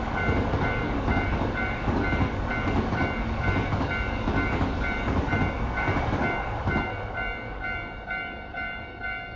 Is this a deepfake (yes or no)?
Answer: yes